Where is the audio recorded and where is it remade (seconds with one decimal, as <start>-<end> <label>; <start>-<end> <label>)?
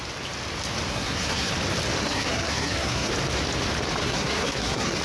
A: 0.0-0.9 recorded; 0.9-1.5 remade; 1.5-2.0 recorded; 2.0-3.1 remade; 3.1-4.0 recorded; 4.0-5.0 remade